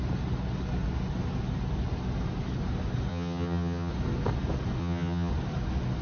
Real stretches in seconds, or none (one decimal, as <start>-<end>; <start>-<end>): 0.0-3.1; 3.9-4.8; 5.3-6.0